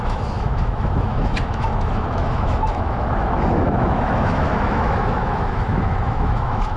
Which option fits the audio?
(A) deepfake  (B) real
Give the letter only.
A